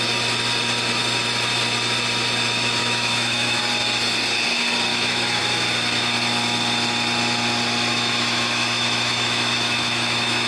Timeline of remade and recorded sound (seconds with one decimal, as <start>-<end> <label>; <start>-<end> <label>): 0.0-2.8 recorded; 2.8-3.6 remade; 3.6-4.9 recorded; 4.9-5.4 remade; 5.4-7.9 recorded; 7.9-10.5 remade

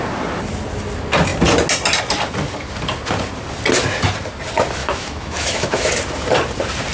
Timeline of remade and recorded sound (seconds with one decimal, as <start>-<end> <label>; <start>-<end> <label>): 0.0-4.8 recorded; 4.8-5.9 remade; 5.9-6.9 recorded

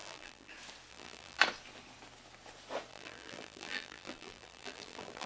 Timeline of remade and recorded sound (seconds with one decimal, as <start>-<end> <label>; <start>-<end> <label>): 0.0-0.5 remade; 0.5-0.9 recorded; 0.9-1.4 remade; 1.4-2.9 recorded; 2.9-5.3 remade

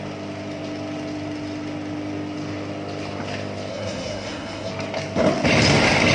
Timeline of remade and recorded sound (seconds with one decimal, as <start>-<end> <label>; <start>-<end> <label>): 0.0-3.7 recorded; 3.7-4.7 remade; 4.7-6.1 recorded